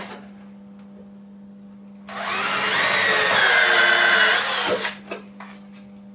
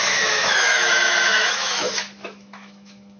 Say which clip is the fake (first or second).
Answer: second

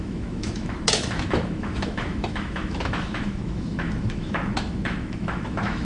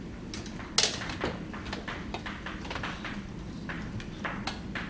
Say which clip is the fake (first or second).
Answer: first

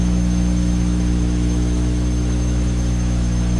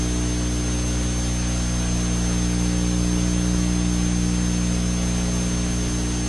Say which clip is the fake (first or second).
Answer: first